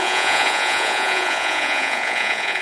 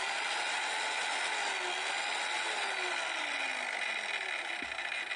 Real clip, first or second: second